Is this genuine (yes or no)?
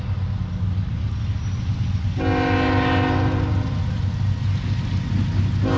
yes